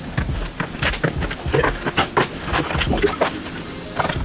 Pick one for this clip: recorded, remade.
recorded